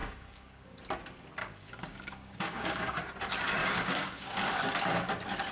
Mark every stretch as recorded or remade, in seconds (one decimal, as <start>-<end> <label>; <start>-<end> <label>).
0.0-0.8 remade; 0.8-1.4 recorded; 1.4-3.0 remade; 3.0-3.6 recorded; 3.6-4.5 remade; 4.5-5.5 recorded